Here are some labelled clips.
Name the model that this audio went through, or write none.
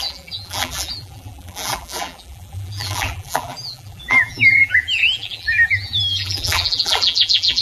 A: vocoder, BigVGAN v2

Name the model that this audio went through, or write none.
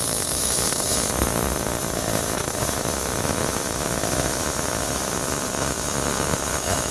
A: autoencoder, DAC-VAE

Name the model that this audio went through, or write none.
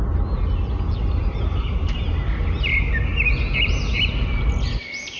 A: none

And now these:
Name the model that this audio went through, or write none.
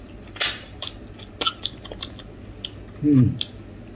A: none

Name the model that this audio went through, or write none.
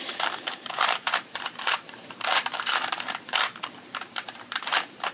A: vocoder, BigVGAN v2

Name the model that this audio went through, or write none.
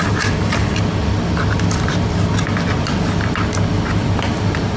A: none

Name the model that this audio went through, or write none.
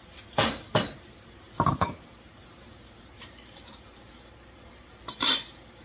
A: vocoder, BigVGAN v2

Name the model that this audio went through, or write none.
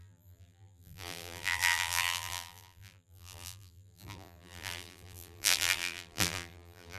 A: vocoder, BigVGAN v2